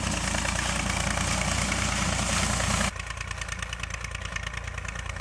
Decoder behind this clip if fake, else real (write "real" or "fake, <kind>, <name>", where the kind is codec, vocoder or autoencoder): real